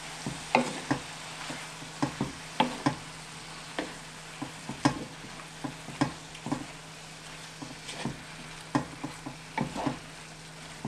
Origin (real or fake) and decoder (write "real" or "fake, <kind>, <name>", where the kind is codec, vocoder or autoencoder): real